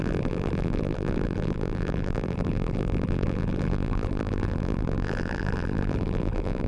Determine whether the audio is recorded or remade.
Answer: remade